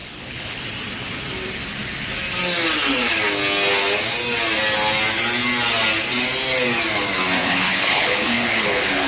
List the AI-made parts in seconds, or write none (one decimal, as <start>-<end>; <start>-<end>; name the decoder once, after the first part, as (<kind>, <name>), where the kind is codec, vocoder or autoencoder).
0.0-0.7 (codec, HILCodec); 7.4-9.1